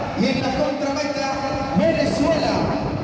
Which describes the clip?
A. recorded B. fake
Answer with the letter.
A